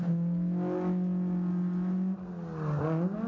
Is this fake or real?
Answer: real